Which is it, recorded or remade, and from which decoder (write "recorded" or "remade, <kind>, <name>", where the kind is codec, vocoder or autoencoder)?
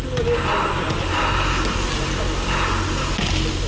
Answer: recorded